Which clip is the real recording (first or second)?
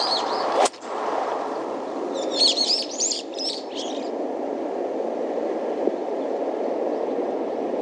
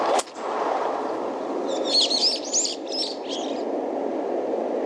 second